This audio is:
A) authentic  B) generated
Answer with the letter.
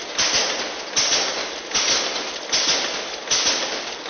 A